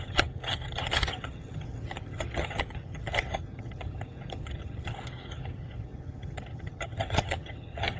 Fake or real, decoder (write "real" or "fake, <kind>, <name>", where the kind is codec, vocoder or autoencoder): fake, vocoder, HiFi-GAN